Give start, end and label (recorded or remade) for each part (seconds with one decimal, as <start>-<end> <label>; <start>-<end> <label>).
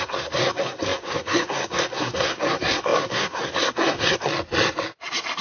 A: 0.0-4.3 remade; 4.3-5.4 recorded